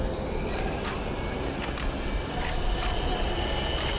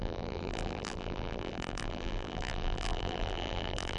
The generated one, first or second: second